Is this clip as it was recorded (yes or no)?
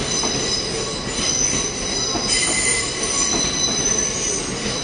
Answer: yes